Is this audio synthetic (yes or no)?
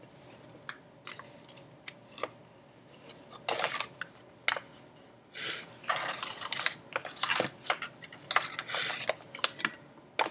no